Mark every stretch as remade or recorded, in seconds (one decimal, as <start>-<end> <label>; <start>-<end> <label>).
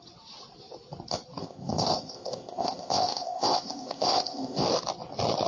0.0-1.4 recorded; 1.4-4.7 remade; 4.7-5.5 recorded